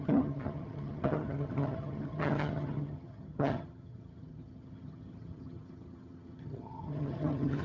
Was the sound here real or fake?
fake